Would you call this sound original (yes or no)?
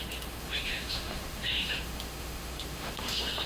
no